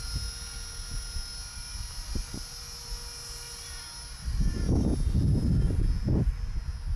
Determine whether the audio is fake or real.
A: real